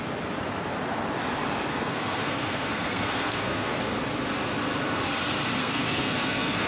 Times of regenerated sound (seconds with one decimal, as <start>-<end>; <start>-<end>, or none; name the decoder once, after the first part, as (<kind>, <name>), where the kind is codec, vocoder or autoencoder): 1.7-3.8 (codec, SNAC); 5.6-6.7